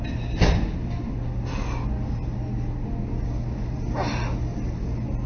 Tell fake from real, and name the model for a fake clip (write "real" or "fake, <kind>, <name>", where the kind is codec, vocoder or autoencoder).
real